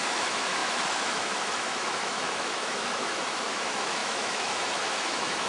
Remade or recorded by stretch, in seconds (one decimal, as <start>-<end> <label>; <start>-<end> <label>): 0.0-5.5 remade